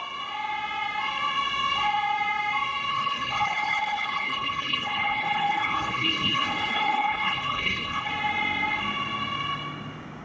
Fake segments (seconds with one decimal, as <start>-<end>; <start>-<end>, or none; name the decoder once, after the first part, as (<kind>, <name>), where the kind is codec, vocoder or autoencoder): 2.9-8.1 (codec, HILCodec)